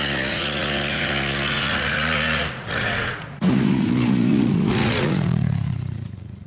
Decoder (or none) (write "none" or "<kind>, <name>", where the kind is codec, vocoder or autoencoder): vocoder, Vocos